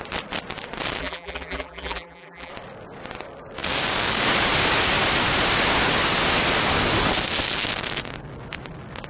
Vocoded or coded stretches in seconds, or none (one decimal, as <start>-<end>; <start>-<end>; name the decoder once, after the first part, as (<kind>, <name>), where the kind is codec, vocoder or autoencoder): 1.0-2.5 (vocoder, BigVGAN v2)